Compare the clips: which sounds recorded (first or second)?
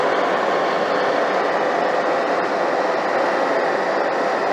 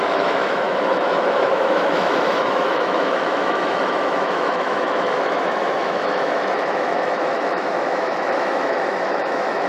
first